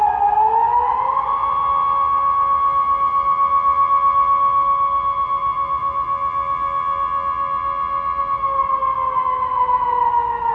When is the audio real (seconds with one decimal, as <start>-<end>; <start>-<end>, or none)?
0.0-9.5; 10.1-10.5